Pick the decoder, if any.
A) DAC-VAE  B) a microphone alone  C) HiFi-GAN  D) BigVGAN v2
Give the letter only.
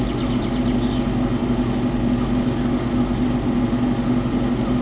B